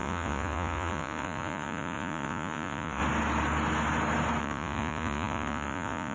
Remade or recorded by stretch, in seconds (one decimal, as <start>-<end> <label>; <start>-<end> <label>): 0.0-3.0 remade; 3.0-4.4 recorded; 4.4-6.1 remade